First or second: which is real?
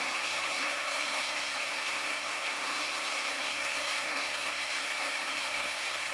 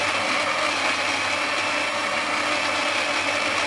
second